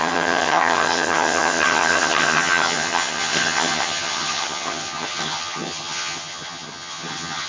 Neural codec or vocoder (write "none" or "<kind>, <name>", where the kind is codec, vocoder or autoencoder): vocoder, HiFi-GAN